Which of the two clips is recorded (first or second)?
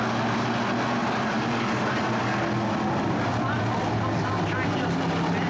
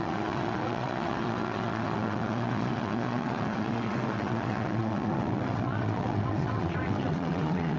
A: first